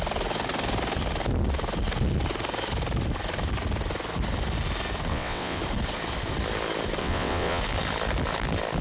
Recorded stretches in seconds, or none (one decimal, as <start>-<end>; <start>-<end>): 0.0-5.1; 5.6-7.0; 7.6-8.8